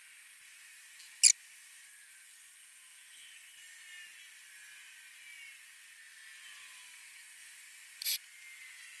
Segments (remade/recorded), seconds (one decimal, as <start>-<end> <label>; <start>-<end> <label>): 0.0-9.0 recorded